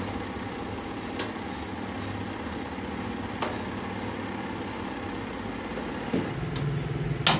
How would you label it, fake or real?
real